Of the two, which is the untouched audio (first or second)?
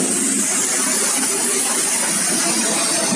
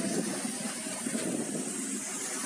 first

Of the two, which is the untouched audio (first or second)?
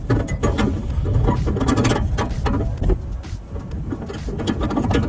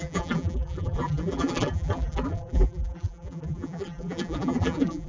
first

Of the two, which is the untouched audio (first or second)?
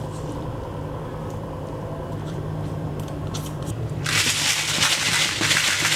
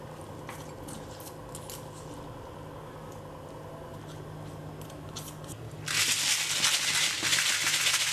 second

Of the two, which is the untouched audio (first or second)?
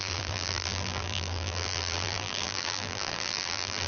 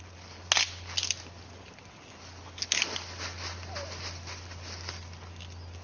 second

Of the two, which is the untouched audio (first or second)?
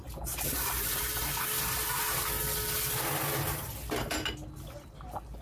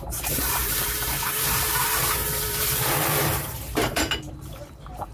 first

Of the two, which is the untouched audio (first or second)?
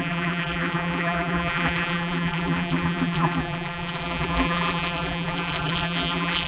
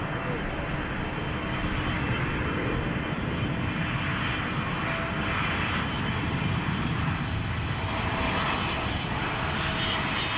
second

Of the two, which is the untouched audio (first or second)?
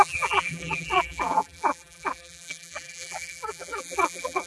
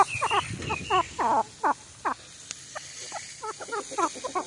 second